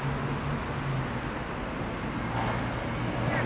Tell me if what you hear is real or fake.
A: real